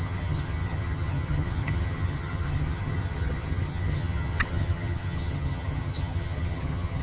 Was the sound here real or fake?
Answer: fake